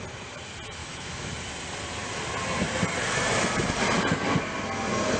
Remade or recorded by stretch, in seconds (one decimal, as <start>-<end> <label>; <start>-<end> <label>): 0.0-0.8 recorded; 0.8-1.3 remade; 1.3-5.2 recorded